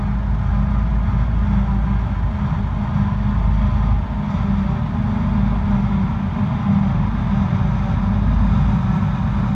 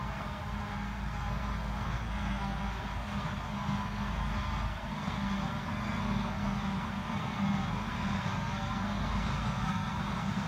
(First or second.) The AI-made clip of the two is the second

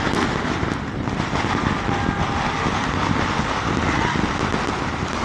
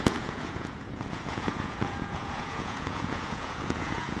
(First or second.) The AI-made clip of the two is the second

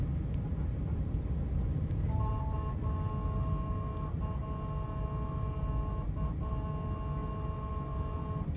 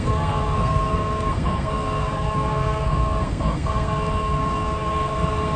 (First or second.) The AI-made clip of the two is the second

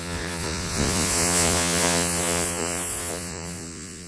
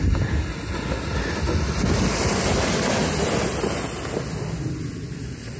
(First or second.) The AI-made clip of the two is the first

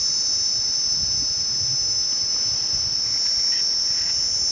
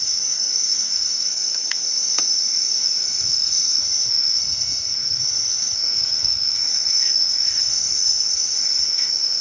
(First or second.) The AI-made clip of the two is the second